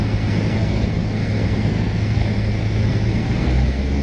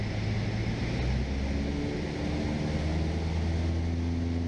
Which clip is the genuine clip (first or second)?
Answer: second